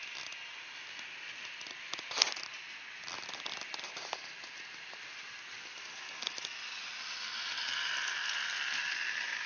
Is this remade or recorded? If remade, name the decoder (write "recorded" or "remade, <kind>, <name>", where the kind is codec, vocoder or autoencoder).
recorded